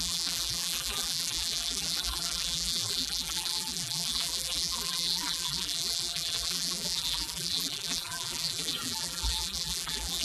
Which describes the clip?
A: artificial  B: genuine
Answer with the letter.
A